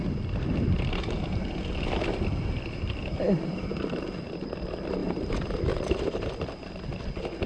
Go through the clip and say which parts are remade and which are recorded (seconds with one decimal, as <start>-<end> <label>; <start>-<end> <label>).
0.0-7.5 recorded